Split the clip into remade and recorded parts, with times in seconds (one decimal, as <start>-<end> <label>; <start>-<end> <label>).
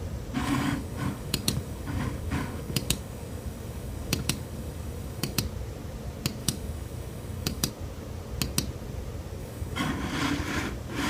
0.0-0.4 recorded; 0.4-5.4 remade; 5.4-6.4 recorded; 6.4-7.7 remade; 7.7-9.4 recorded; 9.4-9.9 remade; 9.9-11.1 recorded